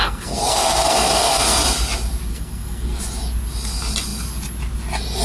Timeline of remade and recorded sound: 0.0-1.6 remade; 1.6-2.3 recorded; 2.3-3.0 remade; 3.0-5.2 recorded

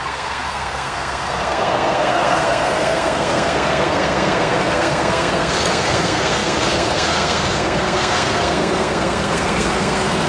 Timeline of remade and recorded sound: 0.0-10.3 remade

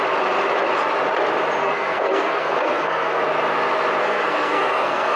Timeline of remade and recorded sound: 0.0-1.6 recorded; 1.6-3.2 remade; 3.2-4.0 recorded; 4.0-5.2 remade

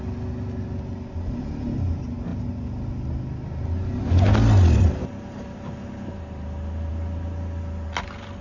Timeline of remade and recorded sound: 0.0-8.4 recorded

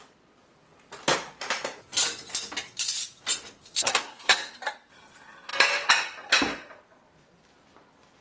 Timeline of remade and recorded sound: 0.0-3.8 recorded; 3.8-4.6 remade; 4.6-8.2 recorded

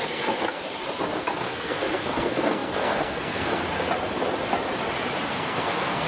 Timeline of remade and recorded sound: 0.0-0.6 remade; 0.6-1.2 recorded; 1.2-3.6 remade; 3.6-5.3 recorded; 5.3-6.1 remade